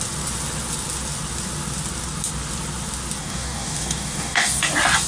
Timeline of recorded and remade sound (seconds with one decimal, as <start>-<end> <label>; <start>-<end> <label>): 0.0-3.2 recorded; 3.2-4.6 remade; 4.6-5.1 recorded